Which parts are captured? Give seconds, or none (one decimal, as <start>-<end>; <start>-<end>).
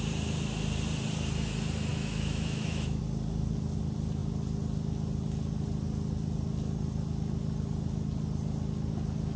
0.0-1.9; 3.0-9.4